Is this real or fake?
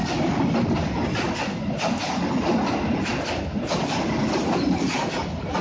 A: real